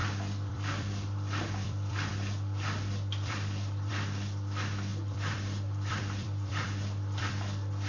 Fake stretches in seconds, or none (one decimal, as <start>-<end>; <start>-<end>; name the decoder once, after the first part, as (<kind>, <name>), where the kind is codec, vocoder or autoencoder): 0.0-3.9 (vocoder, BigVGAN v2); 4.9-7.3